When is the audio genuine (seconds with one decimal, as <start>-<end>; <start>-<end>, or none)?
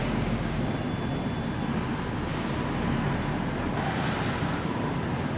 0.6-5.4